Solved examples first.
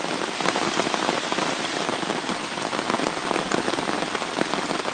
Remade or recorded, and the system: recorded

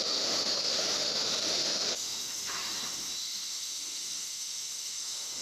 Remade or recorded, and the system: remade, autoencoder, DAC-VAE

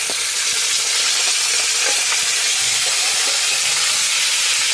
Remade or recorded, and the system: remade, vocoder, BigVGAN v2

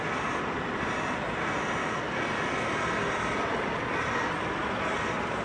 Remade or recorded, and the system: recorded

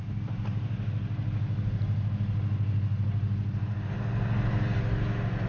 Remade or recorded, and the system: recorded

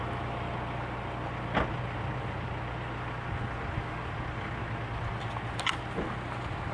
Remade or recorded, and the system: recorded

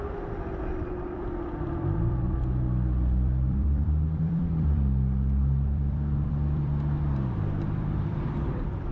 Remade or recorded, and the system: remade, vocoder, BigVGAN v2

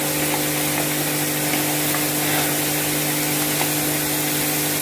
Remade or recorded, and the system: recorded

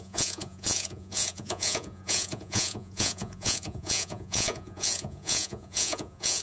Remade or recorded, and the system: remade, vocoder, Vocos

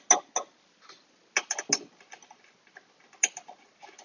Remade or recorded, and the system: recorded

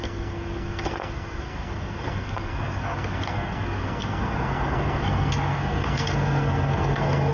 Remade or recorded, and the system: remade, codec, SNAC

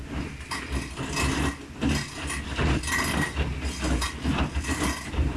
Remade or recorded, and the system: recorded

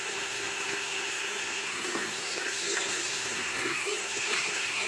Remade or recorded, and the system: remade, codec, SNAC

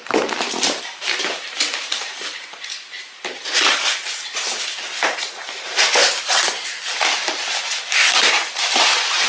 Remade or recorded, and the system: remade, vocoder, BigVGAN v2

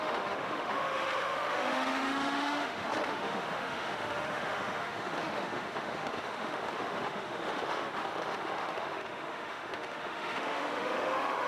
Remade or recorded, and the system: remade, autoencoder, DAC-VAE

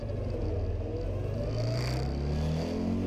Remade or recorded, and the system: recorded